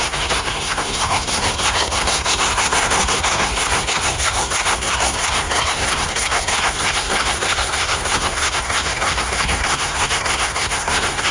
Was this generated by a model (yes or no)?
yes